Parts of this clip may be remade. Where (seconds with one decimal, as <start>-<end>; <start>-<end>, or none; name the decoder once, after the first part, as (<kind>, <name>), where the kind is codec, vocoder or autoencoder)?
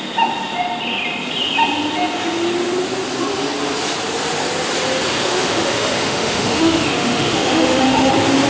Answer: 5.1-8.1 (autoencoder, DAC-VAE)